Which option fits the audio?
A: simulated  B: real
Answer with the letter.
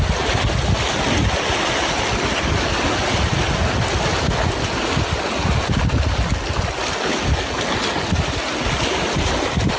B